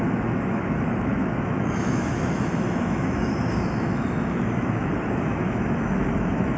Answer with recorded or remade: remade